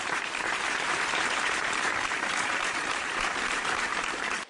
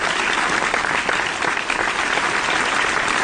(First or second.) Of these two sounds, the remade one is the first